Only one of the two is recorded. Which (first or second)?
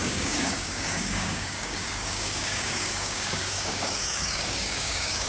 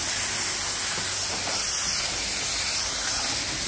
second